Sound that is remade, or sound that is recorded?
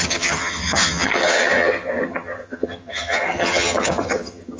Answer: remade